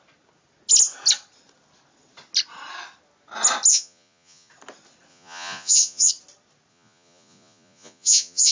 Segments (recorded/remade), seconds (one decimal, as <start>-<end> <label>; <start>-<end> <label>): 0.0-3.7 recorded; 3.7-4.5 remade; 4.5-5.1 recorded; 5.1-6.1 remade; 6.1-6.7 recorded; 6.7-8.5 remade